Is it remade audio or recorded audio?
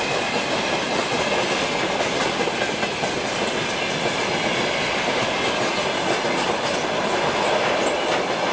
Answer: recorded